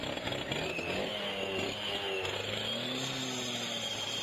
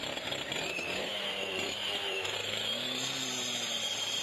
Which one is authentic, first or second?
first